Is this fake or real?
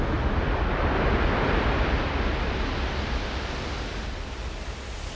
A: real